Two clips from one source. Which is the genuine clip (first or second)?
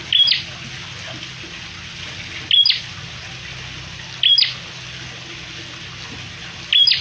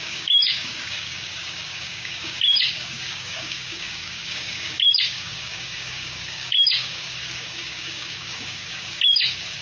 first